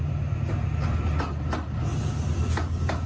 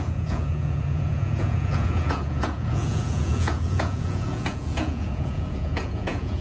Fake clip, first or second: second